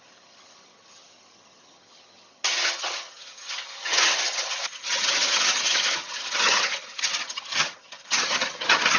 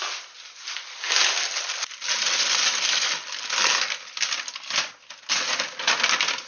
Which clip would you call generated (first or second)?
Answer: first